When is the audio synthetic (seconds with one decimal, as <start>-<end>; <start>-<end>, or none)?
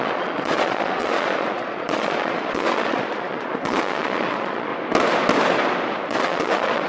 0.0-4.7; 6.1-6.9